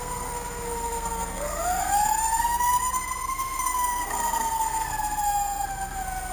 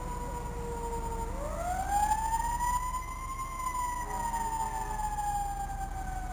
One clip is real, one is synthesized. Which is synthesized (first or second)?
first